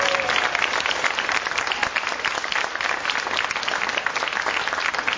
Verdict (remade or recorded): recorded